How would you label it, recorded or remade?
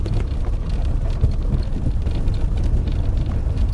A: recorded